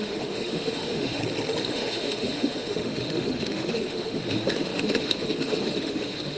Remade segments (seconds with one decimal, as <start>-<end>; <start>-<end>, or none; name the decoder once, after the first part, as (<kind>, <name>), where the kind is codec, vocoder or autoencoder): 0.0-1.2 (autoencoder, DAC-VAE); 1.7-6.4